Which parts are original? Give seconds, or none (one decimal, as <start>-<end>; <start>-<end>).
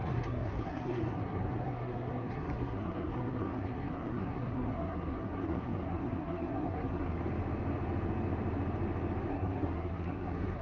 7.2-9.3